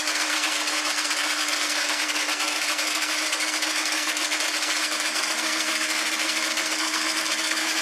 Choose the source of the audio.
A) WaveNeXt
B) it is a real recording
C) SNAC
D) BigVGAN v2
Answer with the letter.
C